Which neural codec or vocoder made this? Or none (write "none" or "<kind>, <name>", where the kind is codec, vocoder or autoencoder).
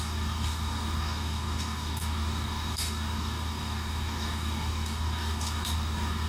codec, DAC